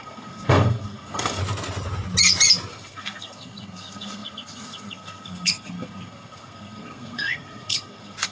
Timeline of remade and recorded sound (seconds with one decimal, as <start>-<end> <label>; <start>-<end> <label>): 0.0-1.4 remade; 1.4-2.7 recorded; 2.7-8.3 remade

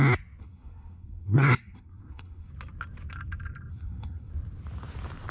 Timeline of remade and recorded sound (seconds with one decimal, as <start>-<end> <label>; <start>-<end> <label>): 0.0-0.4 recorded; 0.4-2.5 remade; 2.5-3.7 recorded; 3.7-4.3 remade; 4.3-5.3 recorded

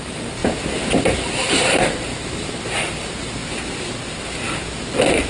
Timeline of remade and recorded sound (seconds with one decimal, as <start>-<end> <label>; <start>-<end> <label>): 0.0-3.4 remade; 3.4-5.3 recorded

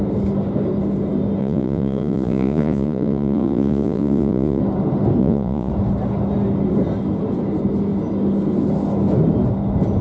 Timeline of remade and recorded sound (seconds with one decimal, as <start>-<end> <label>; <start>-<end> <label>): 0.0-1.4 recorded; 1.4-4.6 remade; 4.6-5.2 recorded; 5.2-5.7 remade; 5.7-10.0 recorded

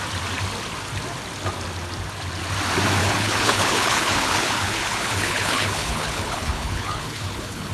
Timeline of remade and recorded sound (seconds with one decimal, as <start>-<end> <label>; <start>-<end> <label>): 0.0-3.0 recorded; 3.0-7.7 remade